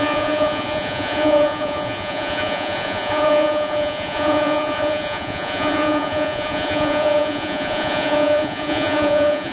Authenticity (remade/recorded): remade